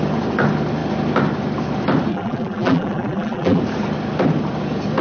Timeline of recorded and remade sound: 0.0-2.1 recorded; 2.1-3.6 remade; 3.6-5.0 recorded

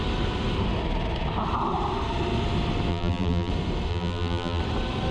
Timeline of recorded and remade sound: 0.0-2.9 recorded; 2.9-3.5 remade; 3.5-3.9 recorded; 3.9-4.6 remade; 4.6-5.1 recorded

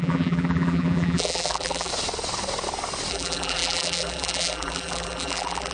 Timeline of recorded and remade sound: 0.0-1.9 remade; 1.9-3.1 recorded; 3.1-5.7 remade